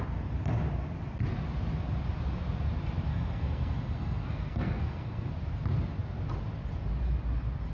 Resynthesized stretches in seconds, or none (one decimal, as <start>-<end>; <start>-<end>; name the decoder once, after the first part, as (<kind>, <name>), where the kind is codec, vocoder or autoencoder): 3.1-5.3 (codec, SNAC)